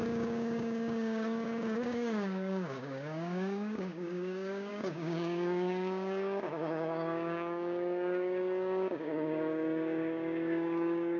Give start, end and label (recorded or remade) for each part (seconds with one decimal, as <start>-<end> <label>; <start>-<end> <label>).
0.0-11.2 remade